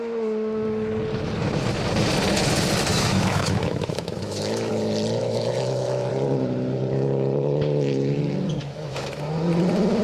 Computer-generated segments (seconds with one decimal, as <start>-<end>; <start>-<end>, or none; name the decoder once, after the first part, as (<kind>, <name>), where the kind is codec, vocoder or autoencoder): 2.9-4.7 (autoencoder, DAC-VAE); 5.2-6.1; 8.6-9.2